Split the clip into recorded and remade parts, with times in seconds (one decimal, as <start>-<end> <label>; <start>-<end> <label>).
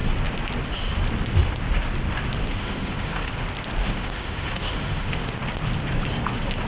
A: 0.0-2.4 recorded; 2.4-3.3 remade; 3.3-3.8 recorded; 3.8-5.3 remade; 5.3-6.7 recorded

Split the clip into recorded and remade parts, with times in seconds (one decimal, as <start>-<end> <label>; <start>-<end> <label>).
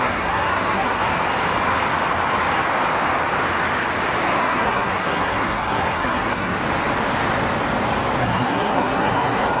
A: 0.0-1.1 remade; 1.1-4.4 recorded; 4.4-6.6 remade; 6.6-8.2 recorded; 8.2-9.6 remade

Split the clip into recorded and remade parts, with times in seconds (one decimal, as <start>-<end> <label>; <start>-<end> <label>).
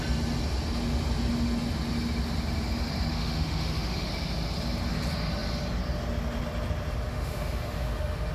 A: 0.0-3.1 recorded; 3.1-4.1 remade; 4.1-7.1 recorded; 7.1-8.3 remade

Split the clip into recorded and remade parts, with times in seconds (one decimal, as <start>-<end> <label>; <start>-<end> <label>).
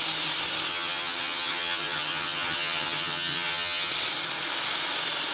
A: 0.0-0.7 recorded; 0.7-3.9 remade; 3.9-5.3 recorded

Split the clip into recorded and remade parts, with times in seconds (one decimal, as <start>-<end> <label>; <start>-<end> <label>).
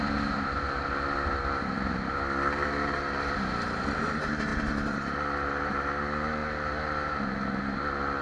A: 0.0-1.4 recorded; 1.4-4.0 remade; 4.0-4.5 recorded; 4.5-5.6 remade; 5.6-8.2 recorded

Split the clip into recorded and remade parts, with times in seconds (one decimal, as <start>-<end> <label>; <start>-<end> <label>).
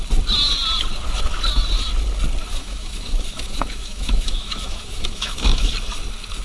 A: 0.0-2.5 recorded; 2.5-5.7 remade; 5.7-6.4 recorded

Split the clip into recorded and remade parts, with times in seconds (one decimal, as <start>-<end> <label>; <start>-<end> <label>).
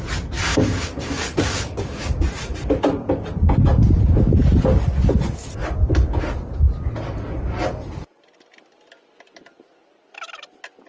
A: 0.0-0.5 recorded; 0.5-2.2 remade; 2.2-10.9 recorded